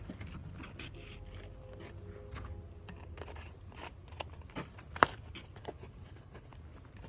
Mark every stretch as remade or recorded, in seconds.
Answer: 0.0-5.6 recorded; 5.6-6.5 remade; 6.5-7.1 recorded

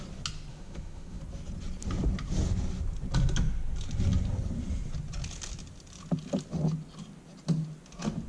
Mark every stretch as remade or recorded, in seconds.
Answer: 0.0-0.5 recorded; 0.5-1.2 remade; 1.2-8.3 recorded

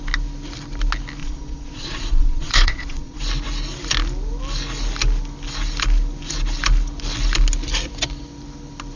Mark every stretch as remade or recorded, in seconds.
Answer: 0.0-1.2 recorded; 1.2-3.2 remade; 3.2-9.0 recorded

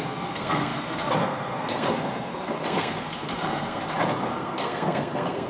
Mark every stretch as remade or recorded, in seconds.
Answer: 0.0-3.8 remade; 3.8-4.3 recorded; 4.3-5.5 remade

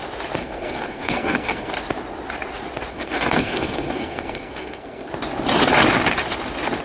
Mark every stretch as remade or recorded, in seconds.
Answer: 0.0-0.4 recorded; 0.4-1.7 remade; 1.7-2.9 recorded; 2.9-5.1 remade; 5.1-6.8 recorded

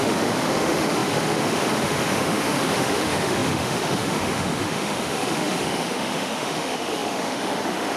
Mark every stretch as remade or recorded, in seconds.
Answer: 0.0-8.0 remade

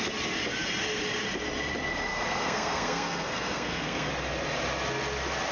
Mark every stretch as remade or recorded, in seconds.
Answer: 0.0-2.1 recorded; 2.1-4.1 remade; 4.1-5.5 recorded